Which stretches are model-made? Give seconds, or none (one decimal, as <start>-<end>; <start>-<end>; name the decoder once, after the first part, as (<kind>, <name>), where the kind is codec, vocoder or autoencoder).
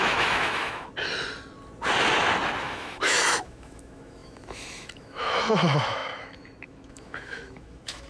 0.0-0.9 (autoencoder, DAC-VAE); 2.6-8.1